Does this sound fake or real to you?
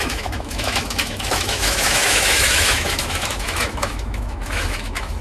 fake